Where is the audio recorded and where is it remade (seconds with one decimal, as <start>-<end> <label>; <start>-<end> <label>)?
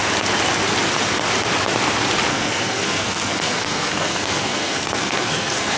0.0-2.3 recorded; 2.3-5.8 remade